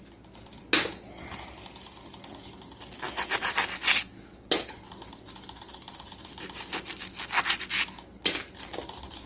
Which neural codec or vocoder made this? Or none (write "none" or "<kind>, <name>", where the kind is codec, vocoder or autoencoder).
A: none